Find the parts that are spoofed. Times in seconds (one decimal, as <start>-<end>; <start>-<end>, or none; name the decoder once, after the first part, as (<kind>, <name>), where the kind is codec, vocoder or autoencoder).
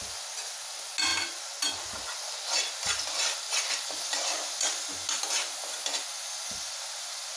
none